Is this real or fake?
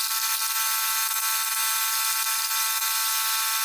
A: real